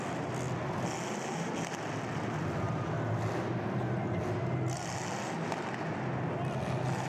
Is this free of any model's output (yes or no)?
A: yes